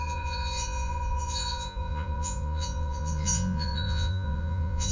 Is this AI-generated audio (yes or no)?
yes